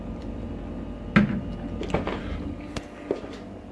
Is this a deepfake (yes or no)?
no